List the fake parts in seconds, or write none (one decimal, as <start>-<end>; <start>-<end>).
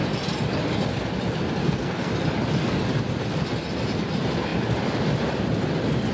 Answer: 1.6-2.1